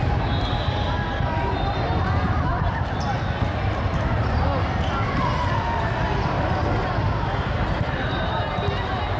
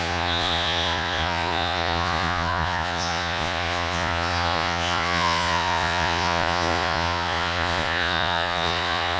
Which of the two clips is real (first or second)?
first